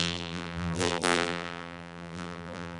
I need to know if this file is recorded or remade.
remade